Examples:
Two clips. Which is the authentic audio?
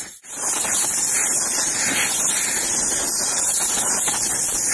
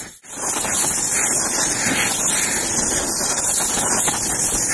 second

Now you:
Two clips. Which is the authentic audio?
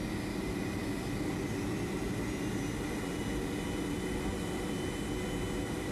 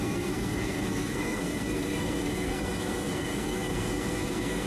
first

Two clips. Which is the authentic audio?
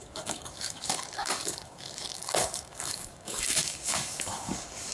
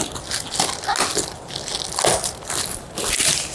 second